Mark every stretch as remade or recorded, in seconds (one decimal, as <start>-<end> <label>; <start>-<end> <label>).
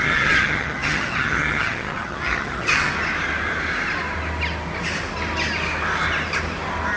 0.0-2.9 remade; 2.9-7.0 recorded